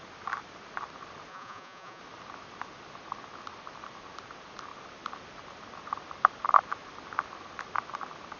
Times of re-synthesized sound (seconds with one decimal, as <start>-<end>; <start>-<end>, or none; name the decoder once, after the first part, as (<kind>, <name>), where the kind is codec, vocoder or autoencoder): 1.3-2.0 (vocoder, Vocos)